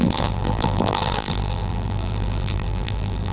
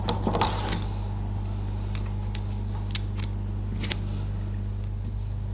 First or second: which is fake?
first